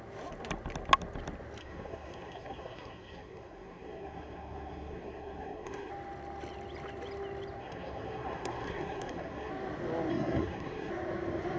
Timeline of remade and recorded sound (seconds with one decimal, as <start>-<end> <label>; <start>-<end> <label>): 0.0-1.6 recorded; 1.6-5.9 remade; 5.9-7.6 recorded; 7.6-9.5 remade; 9.5-10.1 recorded; 10.1-10.9 remade; 10.9-11.6 recorded